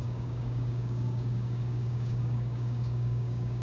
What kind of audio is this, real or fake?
fake